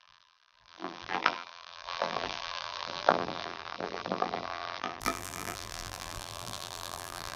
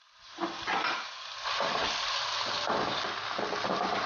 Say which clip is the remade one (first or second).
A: first